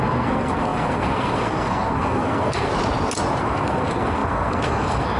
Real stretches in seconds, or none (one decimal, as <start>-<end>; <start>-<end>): 2.7-3.4